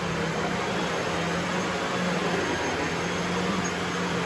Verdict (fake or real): real